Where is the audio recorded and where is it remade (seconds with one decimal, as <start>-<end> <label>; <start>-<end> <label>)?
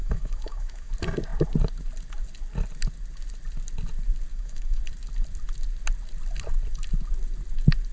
0.0-0.9 remade; 0.9-4.3 recorded; 4.3-4.8 remade; 4.8-7.9 recorded